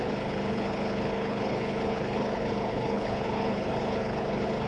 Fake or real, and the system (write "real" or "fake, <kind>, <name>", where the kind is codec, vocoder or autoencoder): fake, codec, HILCodec